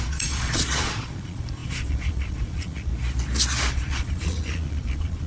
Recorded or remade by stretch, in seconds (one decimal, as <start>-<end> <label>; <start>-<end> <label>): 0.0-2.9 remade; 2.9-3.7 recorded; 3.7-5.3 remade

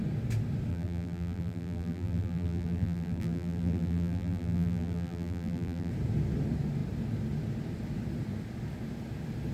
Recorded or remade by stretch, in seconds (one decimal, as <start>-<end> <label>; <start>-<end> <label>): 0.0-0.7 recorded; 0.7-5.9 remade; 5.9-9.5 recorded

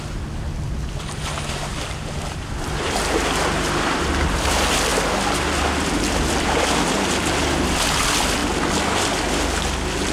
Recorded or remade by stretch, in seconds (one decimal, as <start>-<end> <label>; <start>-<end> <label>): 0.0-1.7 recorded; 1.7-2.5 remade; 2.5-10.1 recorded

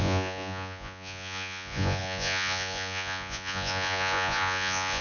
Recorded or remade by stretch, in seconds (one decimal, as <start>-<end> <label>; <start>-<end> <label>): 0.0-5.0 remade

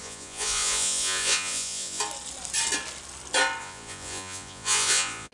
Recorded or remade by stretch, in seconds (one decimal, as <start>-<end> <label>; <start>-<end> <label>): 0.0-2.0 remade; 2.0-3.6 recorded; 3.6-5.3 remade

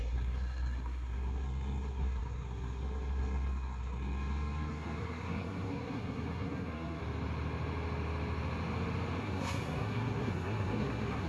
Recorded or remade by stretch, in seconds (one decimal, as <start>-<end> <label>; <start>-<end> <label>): 0.0-7.0 remade; 7.0-9.2 recorded; 9.2-11.3 remade